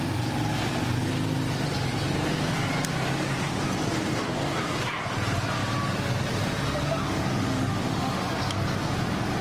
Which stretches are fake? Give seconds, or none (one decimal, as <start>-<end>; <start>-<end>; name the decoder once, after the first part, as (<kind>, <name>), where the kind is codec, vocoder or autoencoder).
7.5-8.3 (autoencoder, DAC-VAE)